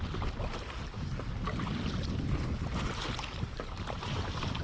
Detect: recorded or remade recorded